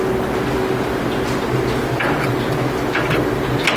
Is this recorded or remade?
recorded